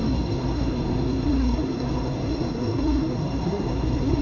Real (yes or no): no